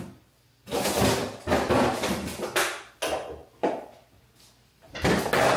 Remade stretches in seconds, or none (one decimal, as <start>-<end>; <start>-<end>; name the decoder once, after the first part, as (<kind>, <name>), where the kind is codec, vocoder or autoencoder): none